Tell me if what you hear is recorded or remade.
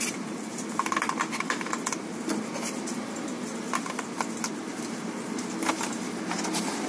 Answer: recorded